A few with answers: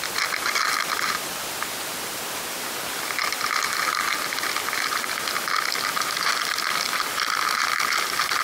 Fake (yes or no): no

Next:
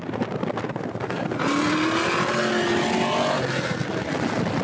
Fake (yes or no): no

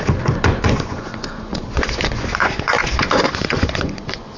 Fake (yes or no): yes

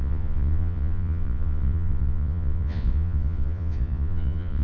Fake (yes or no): yes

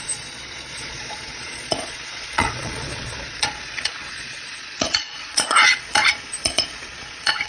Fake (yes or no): yes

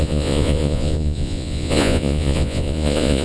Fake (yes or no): yes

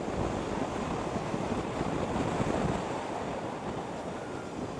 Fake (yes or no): no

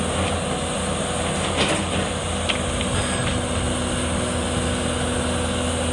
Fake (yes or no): no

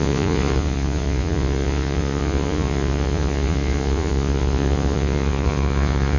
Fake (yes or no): yes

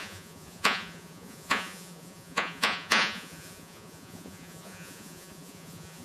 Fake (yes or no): yes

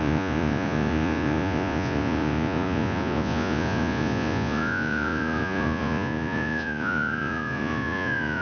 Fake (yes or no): yes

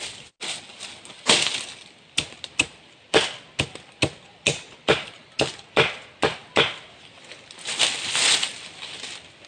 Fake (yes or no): no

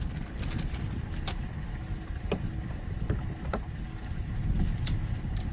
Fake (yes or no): no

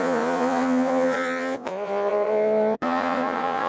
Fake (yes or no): yes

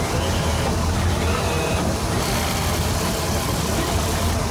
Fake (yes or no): no